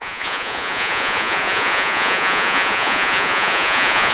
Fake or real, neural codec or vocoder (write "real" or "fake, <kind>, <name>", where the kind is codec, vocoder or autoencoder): fake, vocoder, Vocos